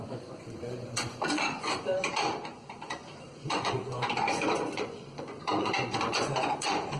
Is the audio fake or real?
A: fake